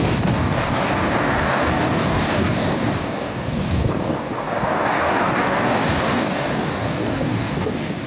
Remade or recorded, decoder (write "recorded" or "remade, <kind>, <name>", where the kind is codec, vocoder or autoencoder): remade, codec, DAC